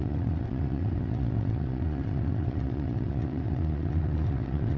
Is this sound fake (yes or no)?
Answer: yes